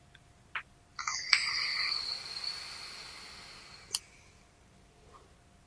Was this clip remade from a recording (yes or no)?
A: no